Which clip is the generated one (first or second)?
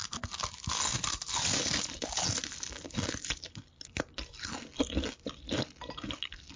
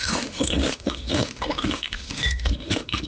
second